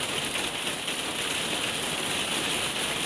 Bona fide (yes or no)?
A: yes